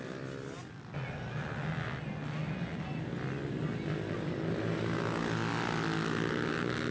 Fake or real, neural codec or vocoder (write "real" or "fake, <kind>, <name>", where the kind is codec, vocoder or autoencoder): real